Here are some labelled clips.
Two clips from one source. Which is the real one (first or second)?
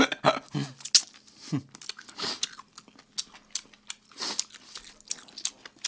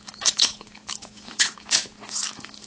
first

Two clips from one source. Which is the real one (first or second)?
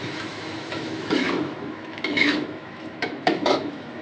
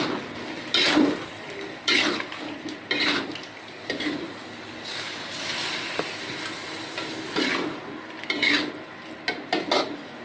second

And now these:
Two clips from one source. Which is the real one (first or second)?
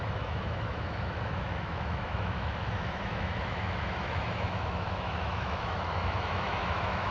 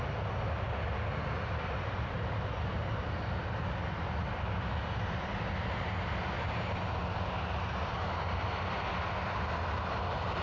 second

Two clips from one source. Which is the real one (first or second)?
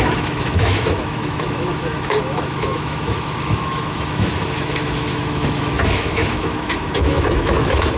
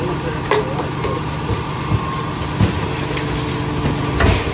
second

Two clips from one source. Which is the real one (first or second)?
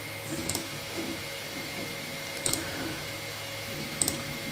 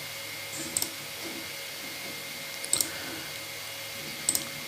second